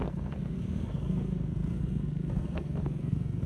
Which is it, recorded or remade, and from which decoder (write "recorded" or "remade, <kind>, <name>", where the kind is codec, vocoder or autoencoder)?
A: remade, codec, SNAC